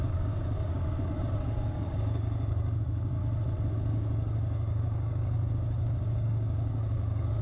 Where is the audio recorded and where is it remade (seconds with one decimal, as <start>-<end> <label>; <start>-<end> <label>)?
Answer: 0.0-3.2 remade; 3.2-3.7 recorded; 3.7-7.4 remade